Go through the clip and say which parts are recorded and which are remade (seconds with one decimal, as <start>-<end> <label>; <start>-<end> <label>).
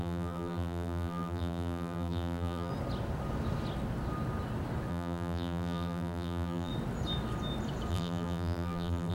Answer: 0.0-2.7 remade; 2.7-4.9 recorded; 4.9-6.7 remade; 6.7-7.9 recorded; 7.9-9.1 remade